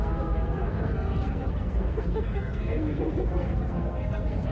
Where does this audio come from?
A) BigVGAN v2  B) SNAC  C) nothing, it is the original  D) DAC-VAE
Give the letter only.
B